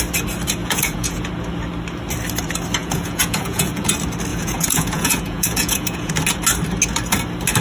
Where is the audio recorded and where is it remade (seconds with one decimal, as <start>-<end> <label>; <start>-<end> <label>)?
0.0-0.6 recorded; 0.6-1.3 remade; 1.3-2.8 recorded; 2.8-3.9 remade; 3.9-4.3 recorded; 4.3-6.1 remade; 6.1-7.6 recorded